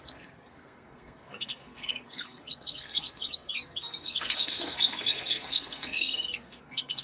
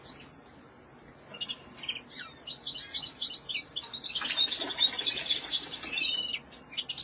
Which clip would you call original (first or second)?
second